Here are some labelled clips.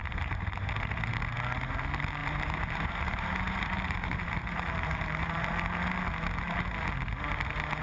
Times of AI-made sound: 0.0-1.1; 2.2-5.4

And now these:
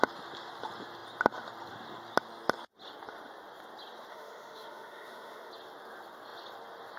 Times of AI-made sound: 4.1-5.5

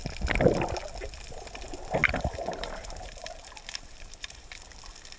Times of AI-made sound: 2.0-4.6

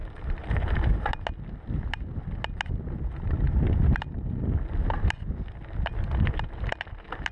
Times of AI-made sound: none